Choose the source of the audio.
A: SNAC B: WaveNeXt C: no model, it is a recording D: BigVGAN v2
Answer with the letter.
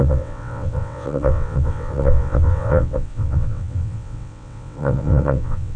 B